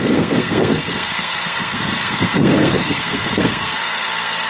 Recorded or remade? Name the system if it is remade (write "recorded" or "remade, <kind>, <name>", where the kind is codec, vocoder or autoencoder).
remade, codec, SNAC